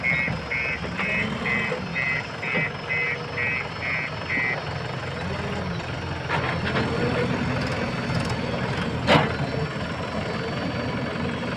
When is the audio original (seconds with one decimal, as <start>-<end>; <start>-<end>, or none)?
0.0-9.7; 10.9-11.6